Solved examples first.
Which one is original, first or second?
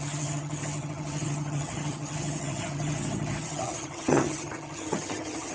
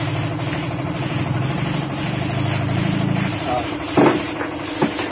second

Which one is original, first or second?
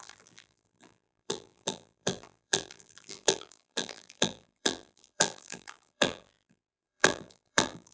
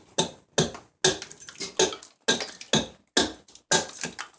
second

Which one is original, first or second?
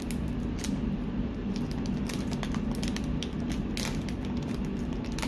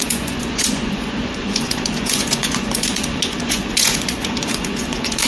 first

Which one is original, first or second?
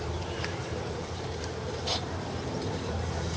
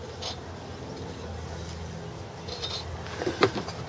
second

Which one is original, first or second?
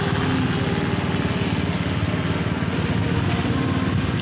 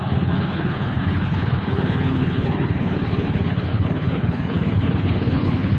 first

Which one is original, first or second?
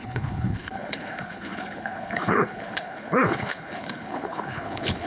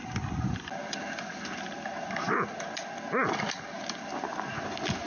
second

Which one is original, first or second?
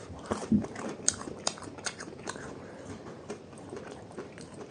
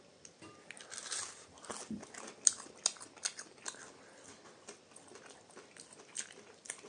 second